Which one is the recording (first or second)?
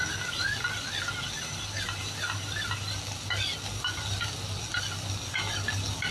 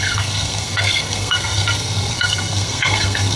first